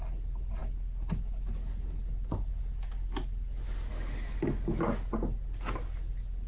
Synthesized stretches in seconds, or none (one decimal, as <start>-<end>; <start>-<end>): none